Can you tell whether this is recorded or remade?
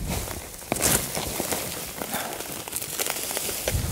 recorded